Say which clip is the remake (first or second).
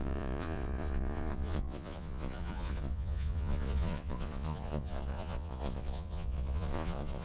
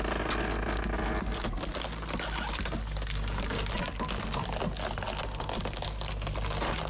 first